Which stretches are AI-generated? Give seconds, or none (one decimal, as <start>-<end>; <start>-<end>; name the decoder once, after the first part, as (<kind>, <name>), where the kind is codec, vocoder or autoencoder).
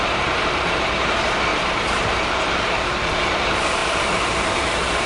0.0-5.1 (vocoder, BigVGAN v2)